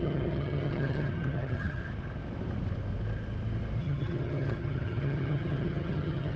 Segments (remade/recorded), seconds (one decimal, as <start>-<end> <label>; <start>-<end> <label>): 0.0-1.8 remade; 1.8-3.8 recorded; 3.8-6.4 remade